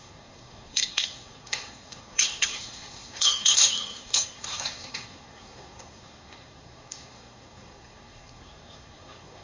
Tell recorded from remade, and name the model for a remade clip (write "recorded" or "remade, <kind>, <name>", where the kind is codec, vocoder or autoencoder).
remade, codec, SNAC